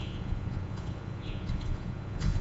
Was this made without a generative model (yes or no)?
no